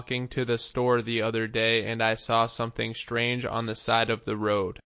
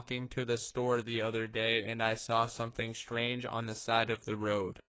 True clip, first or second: first